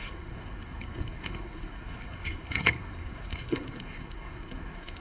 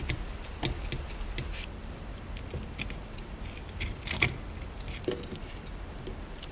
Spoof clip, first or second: first